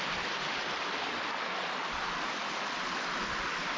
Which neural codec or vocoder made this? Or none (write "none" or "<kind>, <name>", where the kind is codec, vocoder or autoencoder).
none